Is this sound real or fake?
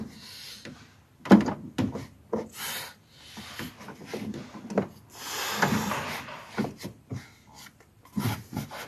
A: real